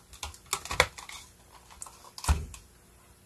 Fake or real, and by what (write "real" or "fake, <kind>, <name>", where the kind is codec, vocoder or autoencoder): real